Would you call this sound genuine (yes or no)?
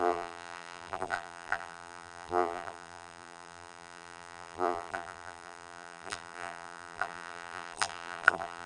no